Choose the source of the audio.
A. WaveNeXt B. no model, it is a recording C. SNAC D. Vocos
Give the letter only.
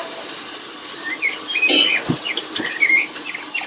B